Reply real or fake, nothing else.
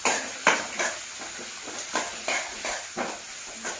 real